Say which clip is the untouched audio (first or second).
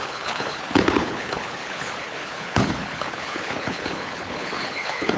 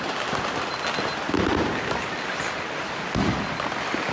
second